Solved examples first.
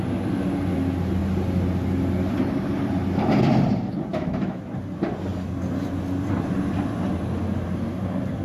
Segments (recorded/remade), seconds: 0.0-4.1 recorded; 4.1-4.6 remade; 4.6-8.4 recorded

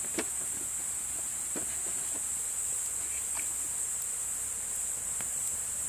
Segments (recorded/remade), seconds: 0.0-5.9 recorded

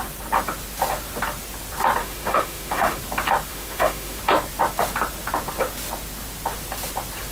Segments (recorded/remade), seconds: 0.0-2.0 recorded; 2.0-3.0 remade; 3.0-3.5 recorded; 3.5-4.2 remade; 4.2-7.3 recorded

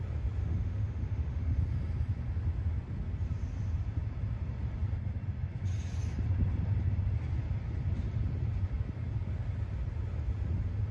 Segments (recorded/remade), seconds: 0.0-0.4 recorded; 0.4-1.6 remade; 1.6-10.9 recorded

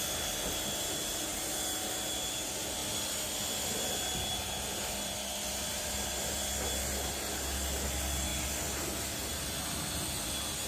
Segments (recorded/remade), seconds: 0.0-10.7 recorded